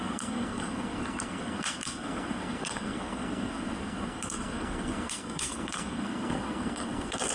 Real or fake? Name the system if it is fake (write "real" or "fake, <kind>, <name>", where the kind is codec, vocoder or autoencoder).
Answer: fake, codec, SNAC